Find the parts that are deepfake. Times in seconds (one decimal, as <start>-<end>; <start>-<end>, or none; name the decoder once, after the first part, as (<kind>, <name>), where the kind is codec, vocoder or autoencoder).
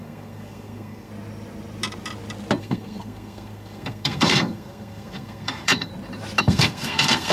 0.0-1.1 (codec, SNAC); 2.6-5.9; 6.4-7.3